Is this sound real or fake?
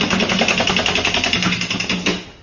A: real